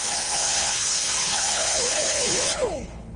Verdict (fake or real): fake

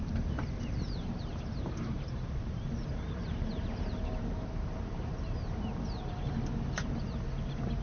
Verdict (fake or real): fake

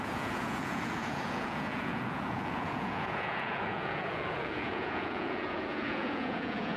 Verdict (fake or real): fake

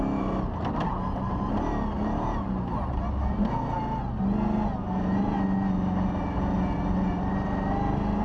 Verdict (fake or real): real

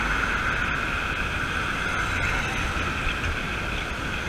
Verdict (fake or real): real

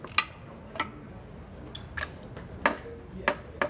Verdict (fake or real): real